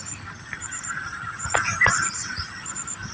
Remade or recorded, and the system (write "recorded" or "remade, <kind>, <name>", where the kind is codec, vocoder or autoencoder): remade, vocoder, BigVGAN v2